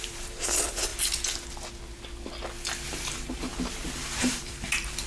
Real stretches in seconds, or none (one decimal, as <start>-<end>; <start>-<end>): 0.9-2.9; 3.5-4.2